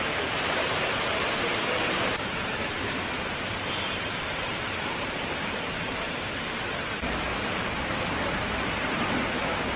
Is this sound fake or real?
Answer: fake